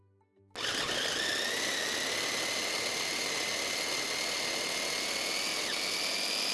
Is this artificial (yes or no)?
no